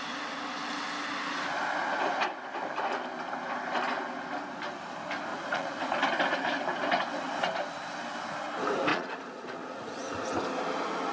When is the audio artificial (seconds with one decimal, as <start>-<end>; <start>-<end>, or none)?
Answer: 5.3-5.9; 8.9-10.2